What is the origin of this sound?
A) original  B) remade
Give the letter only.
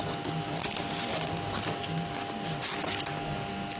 A